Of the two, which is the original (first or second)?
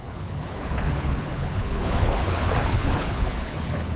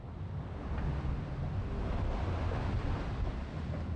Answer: second